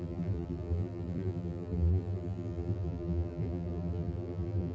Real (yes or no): no